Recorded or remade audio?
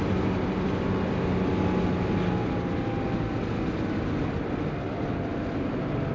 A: recorded